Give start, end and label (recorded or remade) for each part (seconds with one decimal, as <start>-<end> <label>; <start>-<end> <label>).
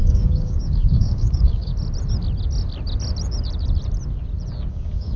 0.0-1.7 remade; 1.7-4.7 recorded; 4.7-5.2 remade